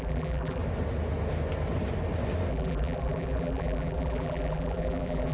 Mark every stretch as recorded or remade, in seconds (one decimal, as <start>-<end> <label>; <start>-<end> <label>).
0.0-0.6 remade; 0.6-2.5 recorded; 2.5-5.3 remade